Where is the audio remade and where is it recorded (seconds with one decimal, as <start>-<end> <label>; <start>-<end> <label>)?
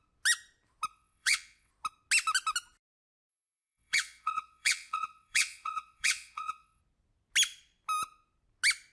0.0-0.9 recorded; 0.9-1.7 remade; 1.7-3.3 recorded; 3.3-6.8 remade; 6.8-8.9 recorded